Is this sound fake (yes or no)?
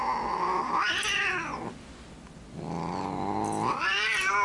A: no